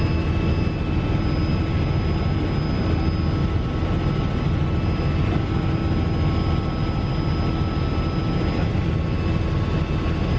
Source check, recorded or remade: recorded